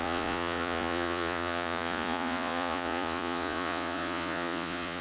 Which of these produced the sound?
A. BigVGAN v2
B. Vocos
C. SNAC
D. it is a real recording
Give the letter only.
B